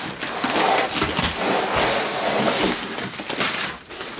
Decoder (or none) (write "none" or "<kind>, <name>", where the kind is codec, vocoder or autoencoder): none